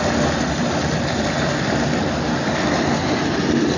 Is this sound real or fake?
real